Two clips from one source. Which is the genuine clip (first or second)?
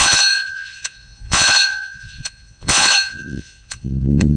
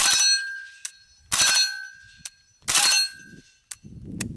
second